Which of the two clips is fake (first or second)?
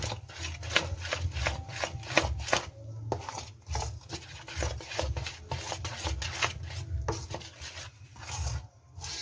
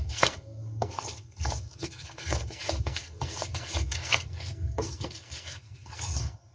second